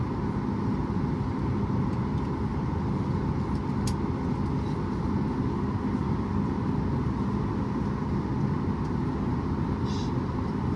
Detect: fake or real real